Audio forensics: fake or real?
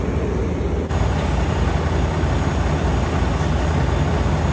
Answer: real